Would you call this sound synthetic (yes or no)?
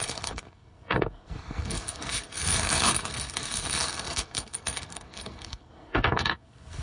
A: yes